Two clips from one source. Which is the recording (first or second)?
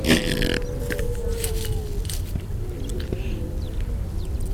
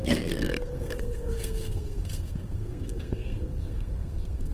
first